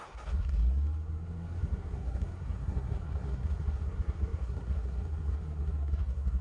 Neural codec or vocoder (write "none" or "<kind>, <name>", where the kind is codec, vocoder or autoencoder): codec, SNAC